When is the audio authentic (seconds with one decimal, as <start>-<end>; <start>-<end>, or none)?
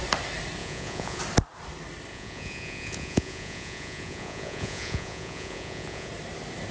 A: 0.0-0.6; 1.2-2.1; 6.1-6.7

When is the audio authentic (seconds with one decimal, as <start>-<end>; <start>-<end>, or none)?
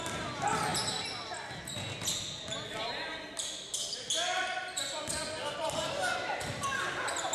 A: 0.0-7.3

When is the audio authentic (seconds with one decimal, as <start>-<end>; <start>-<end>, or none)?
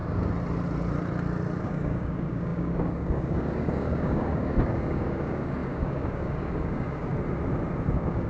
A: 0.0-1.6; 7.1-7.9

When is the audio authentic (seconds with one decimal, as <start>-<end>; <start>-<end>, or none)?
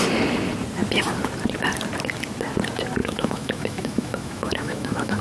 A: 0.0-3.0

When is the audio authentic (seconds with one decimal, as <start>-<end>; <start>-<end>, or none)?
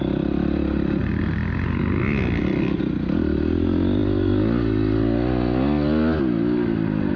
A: 0.0-7.2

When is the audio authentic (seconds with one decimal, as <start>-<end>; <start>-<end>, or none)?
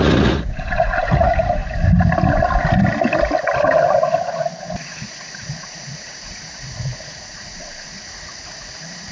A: 1.6-4.6